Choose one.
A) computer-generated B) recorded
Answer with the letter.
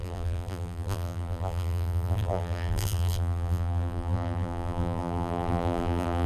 A